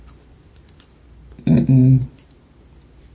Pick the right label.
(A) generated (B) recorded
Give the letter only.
B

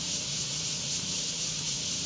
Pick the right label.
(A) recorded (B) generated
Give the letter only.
B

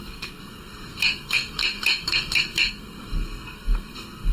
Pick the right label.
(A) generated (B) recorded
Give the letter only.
A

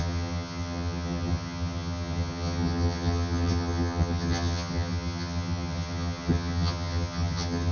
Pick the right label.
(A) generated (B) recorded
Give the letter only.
A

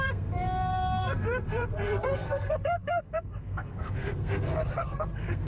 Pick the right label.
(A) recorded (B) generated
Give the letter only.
B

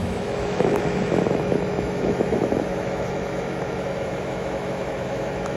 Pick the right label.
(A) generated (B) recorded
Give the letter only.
A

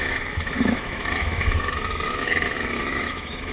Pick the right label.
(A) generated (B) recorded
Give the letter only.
A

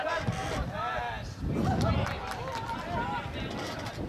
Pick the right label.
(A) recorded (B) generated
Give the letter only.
A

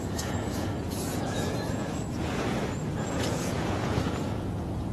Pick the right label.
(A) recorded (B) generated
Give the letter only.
B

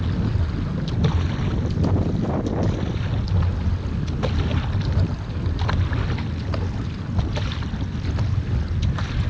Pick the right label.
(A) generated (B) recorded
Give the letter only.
B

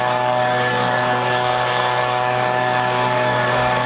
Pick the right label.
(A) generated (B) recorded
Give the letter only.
A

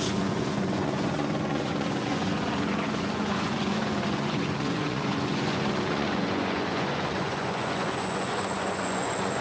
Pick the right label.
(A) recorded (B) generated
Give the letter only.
B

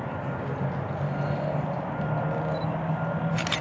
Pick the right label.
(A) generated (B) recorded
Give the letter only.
B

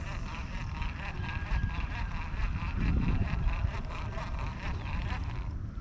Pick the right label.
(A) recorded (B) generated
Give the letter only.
B